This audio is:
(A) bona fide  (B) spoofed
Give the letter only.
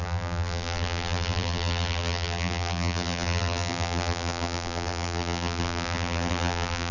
B